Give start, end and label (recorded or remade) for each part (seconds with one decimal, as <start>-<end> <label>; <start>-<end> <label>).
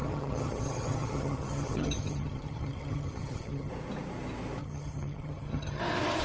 0.0-3.7 remade; 3.7-4.6 recorded; 4.6-5.8 remade; 5.8-6.2 recorded